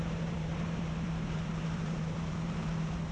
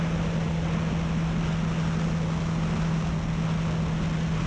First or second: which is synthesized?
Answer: first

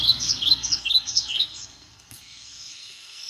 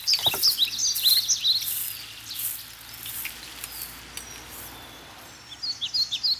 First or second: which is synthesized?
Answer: first